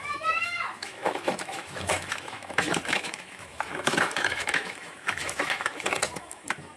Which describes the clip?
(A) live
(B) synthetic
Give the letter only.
B